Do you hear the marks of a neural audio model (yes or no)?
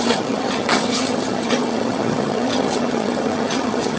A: yes